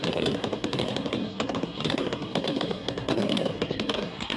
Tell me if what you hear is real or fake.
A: fake